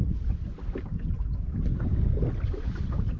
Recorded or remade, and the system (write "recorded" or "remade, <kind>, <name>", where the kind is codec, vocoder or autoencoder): recorded